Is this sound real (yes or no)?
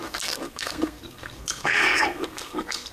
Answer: no